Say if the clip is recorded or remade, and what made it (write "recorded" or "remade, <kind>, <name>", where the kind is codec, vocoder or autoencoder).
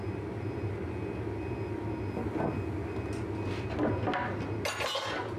recorded